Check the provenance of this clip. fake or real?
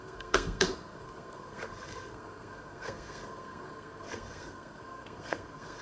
fake